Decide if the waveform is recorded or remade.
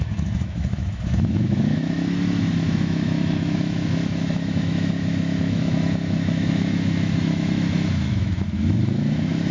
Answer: remade